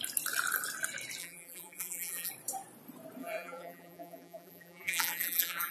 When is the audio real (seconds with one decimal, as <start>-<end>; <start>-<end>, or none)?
0.0-1.2; 2.3-3.2